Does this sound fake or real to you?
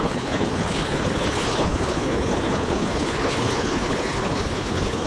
fake